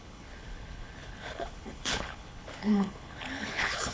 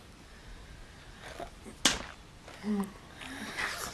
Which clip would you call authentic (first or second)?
second